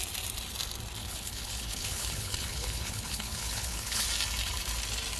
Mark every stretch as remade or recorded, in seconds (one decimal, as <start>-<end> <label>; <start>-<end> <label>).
0.0-1.0 recorded; 1.0-4.1 remade; 4.1-5.2 recorded